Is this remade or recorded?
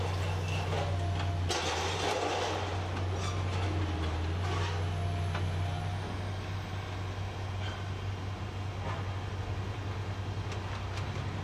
recorded